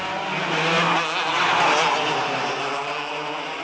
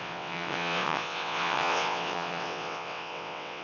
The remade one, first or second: second